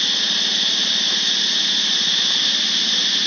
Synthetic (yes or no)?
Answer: no